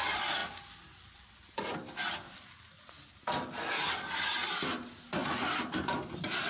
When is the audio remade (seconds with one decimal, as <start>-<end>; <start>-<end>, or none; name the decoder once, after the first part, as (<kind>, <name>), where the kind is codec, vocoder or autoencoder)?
none